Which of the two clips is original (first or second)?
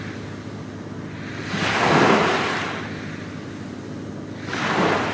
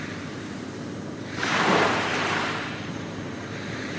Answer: first